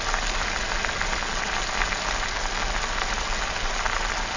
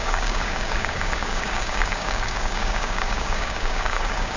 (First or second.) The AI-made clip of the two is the second